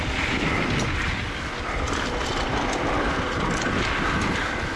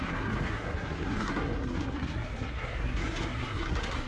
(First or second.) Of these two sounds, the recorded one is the first